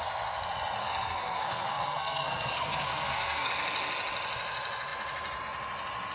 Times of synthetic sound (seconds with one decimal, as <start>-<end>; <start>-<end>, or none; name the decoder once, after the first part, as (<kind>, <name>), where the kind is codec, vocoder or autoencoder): 0.8-3.5 (codec, SNAC)